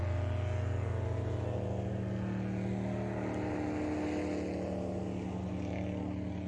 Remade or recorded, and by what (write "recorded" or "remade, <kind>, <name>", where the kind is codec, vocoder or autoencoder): recorded